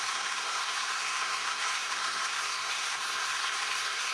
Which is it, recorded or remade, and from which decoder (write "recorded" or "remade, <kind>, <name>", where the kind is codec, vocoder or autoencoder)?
remade, codec, SNAC